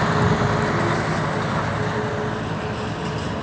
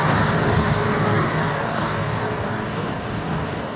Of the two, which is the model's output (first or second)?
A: second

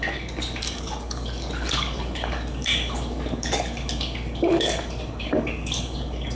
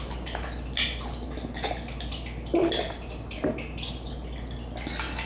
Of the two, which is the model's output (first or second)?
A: first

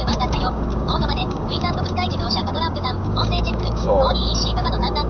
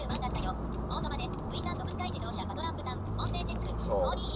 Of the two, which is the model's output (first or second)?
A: first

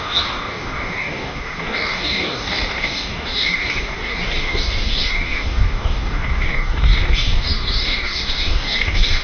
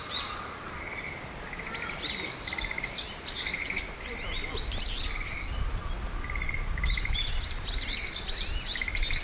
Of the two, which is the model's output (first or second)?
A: first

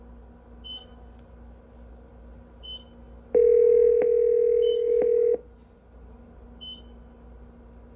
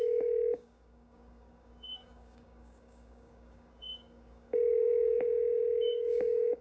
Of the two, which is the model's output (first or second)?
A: second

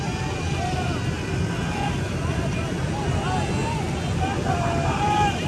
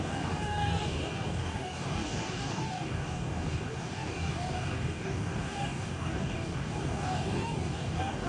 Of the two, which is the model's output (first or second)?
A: second